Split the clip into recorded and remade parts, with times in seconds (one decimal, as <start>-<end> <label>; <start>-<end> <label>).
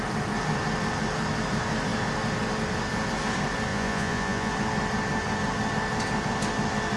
0.0-3.7 recorded; 3.7-4.5 remade; 4.5-7.0 recorded